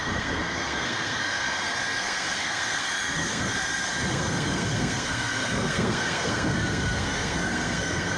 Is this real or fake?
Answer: fake